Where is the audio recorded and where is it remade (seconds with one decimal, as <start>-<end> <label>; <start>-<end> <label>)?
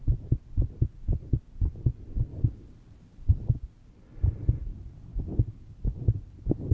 0.0-6.7 recorded